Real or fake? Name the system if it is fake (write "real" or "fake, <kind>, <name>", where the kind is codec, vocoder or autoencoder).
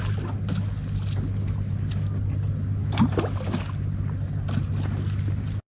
real